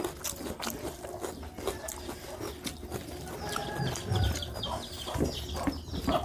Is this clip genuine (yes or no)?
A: yes